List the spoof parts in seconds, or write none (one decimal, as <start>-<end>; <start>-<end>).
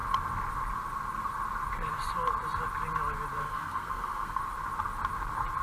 3.4-4.4